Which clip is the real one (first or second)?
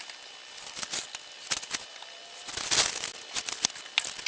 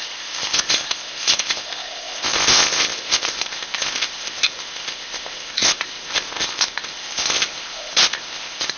first